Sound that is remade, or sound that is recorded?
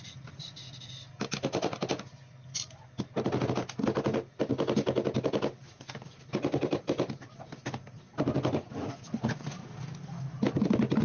recorded